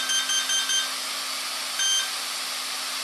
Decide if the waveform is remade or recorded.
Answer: recorded